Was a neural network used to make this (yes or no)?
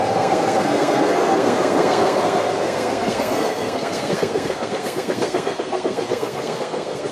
yes